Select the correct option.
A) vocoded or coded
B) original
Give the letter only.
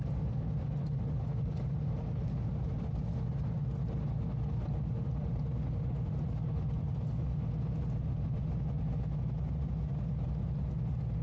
B